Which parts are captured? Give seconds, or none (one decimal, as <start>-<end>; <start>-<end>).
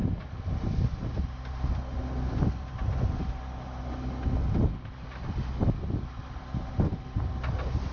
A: 0.0-7.9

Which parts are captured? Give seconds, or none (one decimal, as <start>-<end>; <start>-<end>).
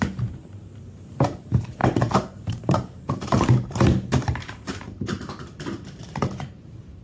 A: none